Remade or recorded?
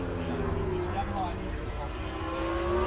recorded